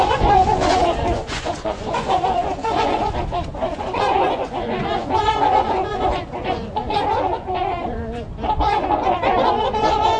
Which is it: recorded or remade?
remade